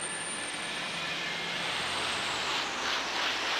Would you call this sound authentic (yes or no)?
yes